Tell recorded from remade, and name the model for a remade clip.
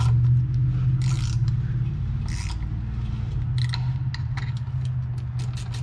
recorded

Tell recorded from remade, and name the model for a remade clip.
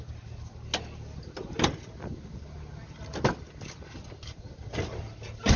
recorded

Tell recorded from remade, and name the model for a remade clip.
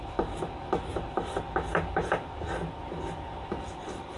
recorded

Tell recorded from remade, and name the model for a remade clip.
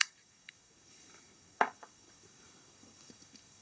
remade, codec, DAC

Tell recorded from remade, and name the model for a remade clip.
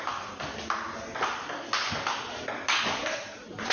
recorded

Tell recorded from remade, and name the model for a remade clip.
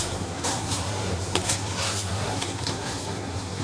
remade, codec, SNAC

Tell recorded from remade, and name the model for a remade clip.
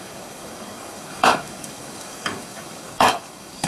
remade, codec, DAC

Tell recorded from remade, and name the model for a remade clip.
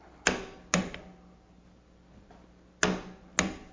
recorded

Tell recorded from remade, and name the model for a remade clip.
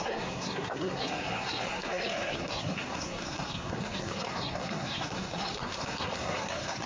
remade, codec, SNAC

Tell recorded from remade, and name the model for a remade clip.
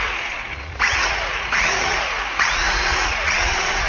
remade, vocoder, Vocos